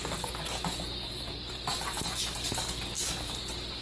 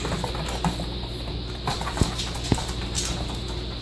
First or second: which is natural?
second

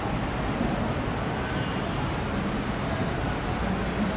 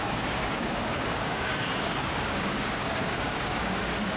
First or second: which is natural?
first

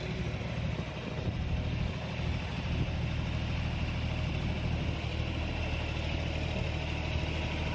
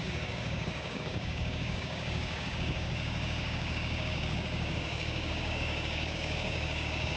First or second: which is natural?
first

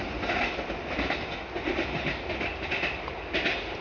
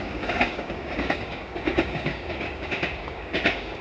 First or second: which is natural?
first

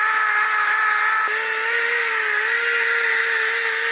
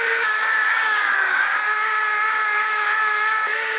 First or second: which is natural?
first